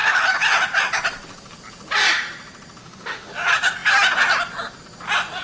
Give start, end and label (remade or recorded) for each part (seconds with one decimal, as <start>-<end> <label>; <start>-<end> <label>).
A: 0.0-2.8 recorded; 2.8-3.3 remade; 3.3-5.4 recorded